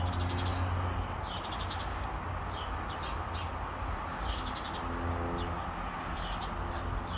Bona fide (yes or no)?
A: yes